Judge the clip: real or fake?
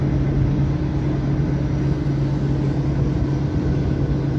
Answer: real